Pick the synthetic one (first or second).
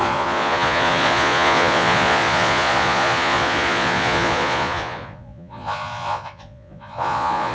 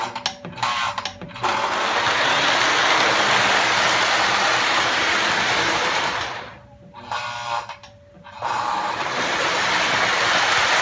first